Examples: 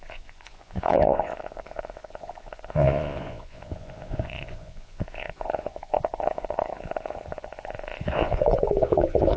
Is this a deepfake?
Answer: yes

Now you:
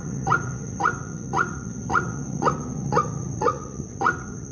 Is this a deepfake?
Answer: yes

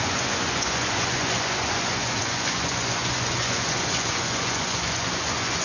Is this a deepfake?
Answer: yes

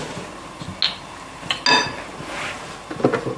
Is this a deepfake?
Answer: no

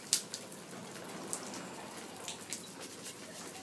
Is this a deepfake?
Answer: no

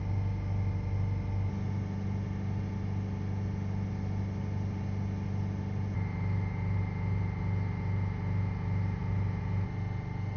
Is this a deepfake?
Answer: no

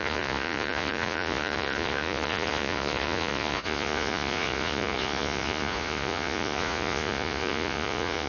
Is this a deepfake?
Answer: yes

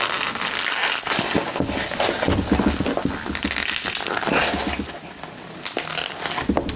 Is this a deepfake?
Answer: no